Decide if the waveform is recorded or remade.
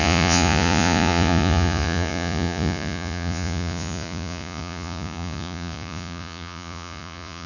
remade